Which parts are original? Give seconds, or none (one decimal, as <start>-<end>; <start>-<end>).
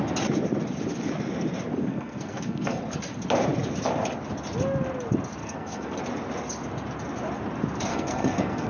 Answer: 0.0-1.9; 2.8-5.4; 6.0-7.9